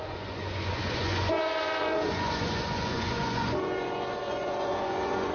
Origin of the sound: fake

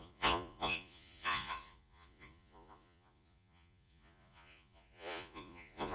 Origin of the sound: fake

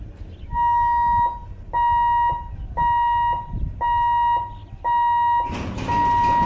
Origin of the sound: real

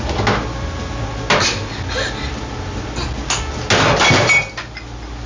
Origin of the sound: real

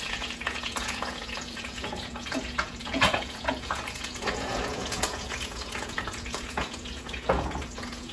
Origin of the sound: fake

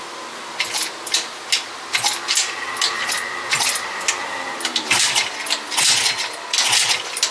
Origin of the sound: real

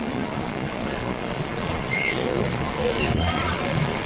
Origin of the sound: fake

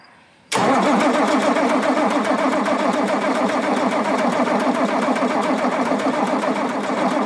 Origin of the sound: fake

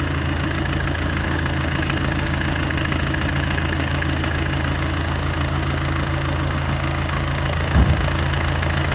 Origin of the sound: fake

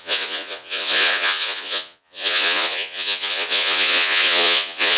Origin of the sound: fake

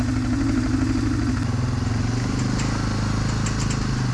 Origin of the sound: real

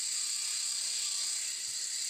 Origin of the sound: real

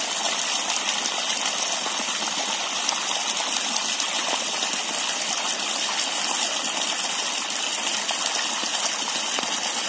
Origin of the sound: real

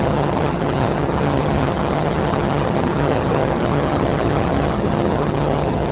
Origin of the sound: fake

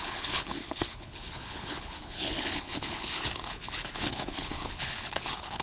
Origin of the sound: fake